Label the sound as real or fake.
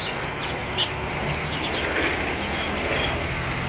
real